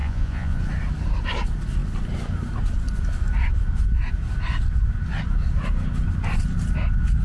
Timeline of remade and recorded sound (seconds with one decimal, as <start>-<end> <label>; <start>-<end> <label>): 0.0-0.6 remade; 0.6-7.2 recorded